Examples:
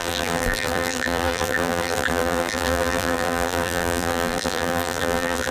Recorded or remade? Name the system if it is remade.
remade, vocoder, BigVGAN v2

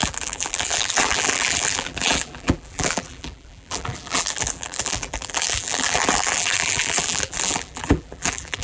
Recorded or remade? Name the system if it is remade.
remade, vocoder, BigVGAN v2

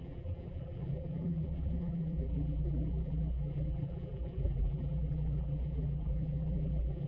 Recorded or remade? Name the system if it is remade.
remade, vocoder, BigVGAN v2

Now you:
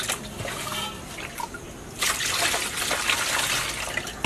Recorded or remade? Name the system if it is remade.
recorded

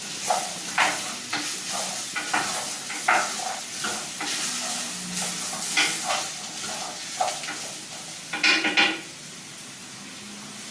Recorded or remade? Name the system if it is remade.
recorded